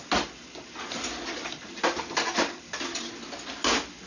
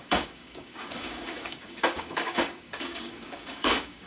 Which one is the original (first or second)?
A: first